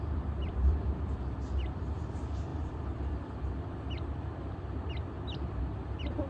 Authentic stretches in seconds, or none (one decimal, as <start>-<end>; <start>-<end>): none